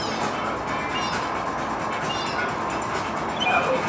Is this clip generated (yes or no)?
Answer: no